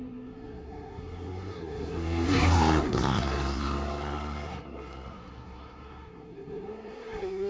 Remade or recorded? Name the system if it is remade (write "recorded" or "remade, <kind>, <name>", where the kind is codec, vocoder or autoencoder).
remade, codec, SNAC